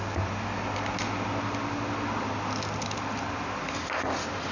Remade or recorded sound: recorded